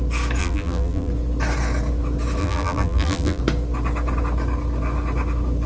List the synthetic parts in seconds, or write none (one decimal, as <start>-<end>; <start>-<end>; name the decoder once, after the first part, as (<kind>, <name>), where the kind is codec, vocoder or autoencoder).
0.4-1.1 (vocoder, BigVGAN v2); 2.4-3.4